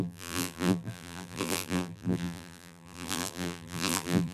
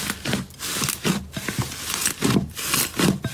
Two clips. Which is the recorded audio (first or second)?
second